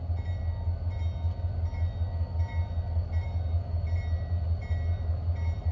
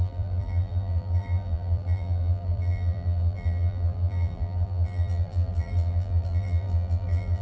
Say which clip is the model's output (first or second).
second